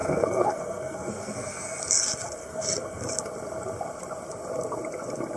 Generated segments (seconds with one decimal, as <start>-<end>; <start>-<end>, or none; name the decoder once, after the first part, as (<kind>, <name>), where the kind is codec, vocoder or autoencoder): 0.0-1.8 (codec, SNAC); 2.4-3.0